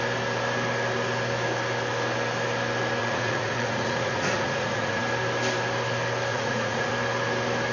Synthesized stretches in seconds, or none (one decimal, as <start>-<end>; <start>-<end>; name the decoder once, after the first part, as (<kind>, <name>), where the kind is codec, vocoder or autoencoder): 3.0-5.0 (vocoder, Vocos); 6.3-6.9